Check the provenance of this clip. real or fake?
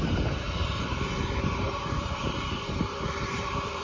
fake